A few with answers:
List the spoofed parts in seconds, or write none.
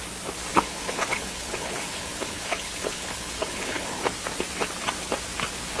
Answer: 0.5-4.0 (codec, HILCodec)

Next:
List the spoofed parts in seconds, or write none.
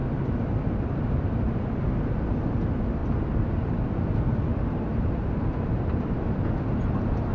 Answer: 0.0-2.5 (vocoder, BigVGAN v2); 4.5-6.1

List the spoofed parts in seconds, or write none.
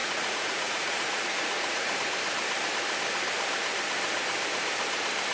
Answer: 0.0-1.9 (vocoder, Vocos)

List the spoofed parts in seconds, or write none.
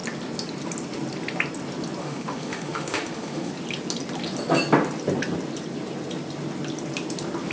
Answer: 2.0-3.5 (autoencoder, DAC-VAE)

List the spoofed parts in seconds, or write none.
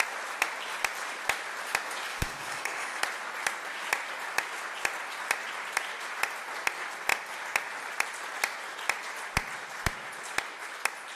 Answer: 2.1-3.0 (codec, DAC)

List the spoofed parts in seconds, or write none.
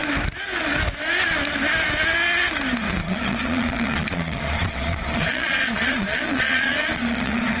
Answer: 3.0-7.6 (vocoder, Vocos)